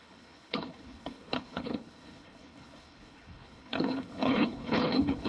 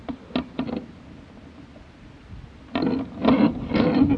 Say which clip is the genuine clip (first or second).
second